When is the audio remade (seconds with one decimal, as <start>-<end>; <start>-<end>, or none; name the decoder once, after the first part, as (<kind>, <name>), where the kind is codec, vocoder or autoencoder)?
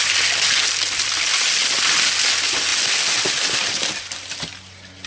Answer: none